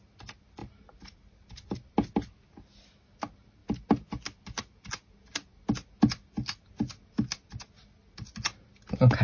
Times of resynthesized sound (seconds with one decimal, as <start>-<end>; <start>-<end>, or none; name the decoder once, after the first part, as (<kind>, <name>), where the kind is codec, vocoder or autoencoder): none